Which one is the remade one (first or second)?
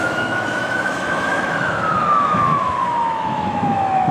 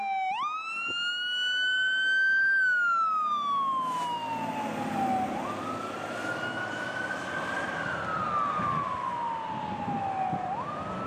first